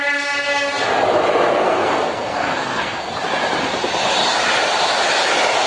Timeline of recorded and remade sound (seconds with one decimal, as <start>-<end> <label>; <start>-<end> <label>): 0.0-1.6 recorded; 1.6-3.1 remade; 3.1-5.7 recorded